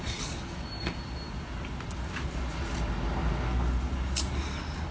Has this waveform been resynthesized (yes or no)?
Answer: no